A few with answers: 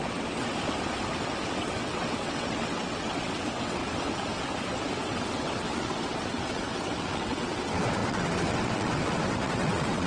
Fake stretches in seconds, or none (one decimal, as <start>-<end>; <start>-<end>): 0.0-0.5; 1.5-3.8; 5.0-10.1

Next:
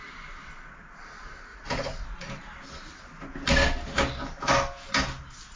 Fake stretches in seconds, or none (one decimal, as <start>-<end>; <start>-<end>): 1.5-2.3

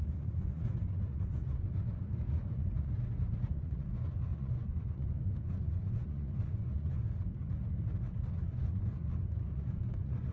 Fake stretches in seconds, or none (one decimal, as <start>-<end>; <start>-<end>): 0.0-7.0; 8.3-10.3

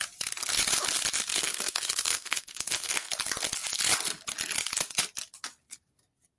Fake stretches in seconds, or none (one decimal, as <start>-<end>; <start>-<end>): 1.3-3.1

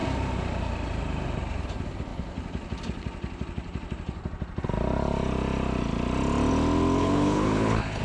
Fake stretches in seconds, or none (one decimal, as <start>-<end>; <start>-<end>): 7.0-8.0

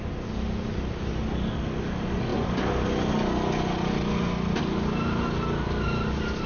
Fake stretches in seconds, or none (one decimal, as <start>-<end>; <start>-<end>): none